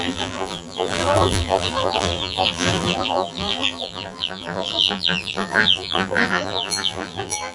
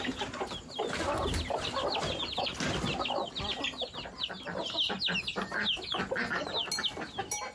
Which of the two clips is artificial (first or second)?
first